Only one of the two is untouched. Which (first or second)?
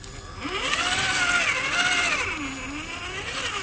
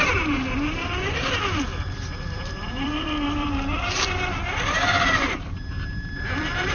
first